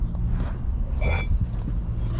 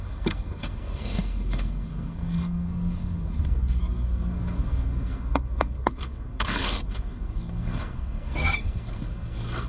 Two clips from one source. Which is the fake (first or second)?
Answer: second